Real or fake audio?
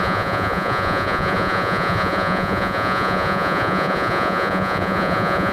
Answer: fake